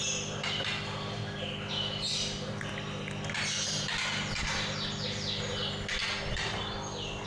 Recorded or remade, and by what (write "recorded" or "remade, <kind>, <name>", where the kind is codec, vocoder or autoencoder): recorded